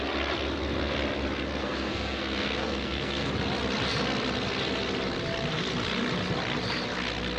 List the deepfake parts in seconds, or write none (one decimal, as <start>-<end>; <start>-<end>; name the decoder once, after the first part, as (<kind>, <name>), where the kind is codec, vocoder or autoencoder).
1.6-3.3 (codec, SNAC)